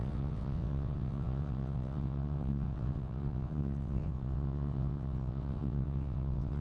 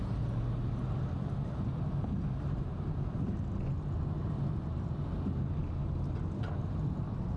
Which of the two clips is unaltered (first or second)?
second